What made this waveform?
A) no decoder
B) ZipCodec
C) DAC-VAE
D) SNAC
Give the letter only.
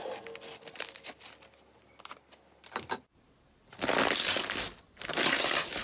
A